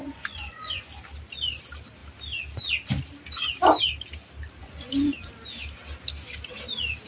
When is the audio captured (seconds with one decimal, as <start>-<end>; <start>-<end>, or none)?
0.8-4.6; 5.3-7.1